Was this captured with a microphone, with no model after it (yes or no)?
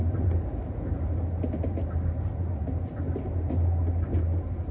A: yes